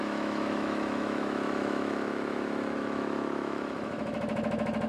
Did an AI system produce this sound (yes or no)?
yes